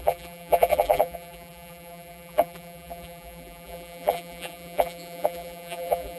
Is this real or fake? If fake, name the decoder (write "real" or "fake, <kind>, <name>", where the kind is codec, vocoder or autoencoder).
fake, vocoder, BigVGAN v2